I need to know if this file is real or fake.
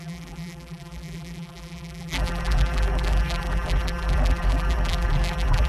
fake